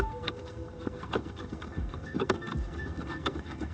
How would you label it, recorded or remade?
remade